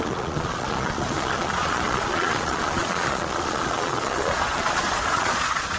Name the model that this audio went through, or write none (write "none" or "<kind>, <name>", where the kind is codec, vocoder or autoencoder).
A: vocoder, Vocos